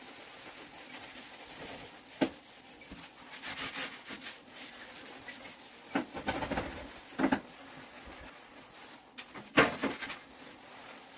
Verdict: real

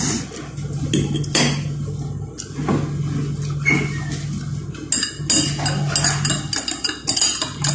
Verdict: real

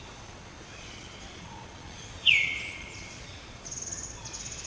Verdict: fake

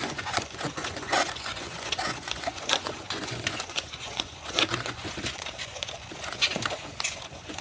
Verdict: fake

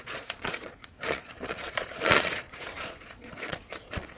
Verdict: fake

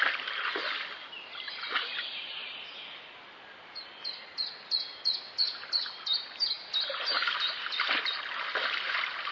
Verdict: real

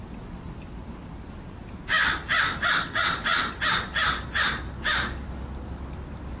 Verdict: real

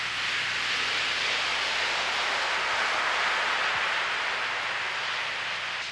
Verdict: real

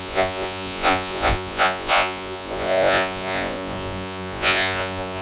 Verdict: fake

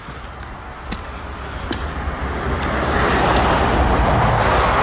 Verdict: real